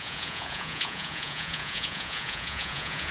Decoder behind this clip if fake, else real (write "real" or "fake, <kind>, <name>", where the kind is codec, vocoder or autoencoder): fake, vocoder, Vocos